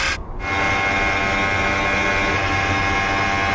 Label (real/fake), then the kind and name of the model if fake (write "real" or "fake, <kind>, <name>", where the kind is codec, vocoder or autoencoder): real